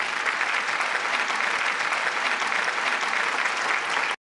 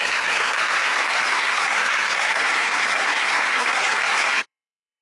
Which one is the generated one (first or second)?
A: second